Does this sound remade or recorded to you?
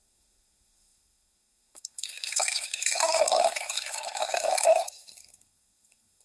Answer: remade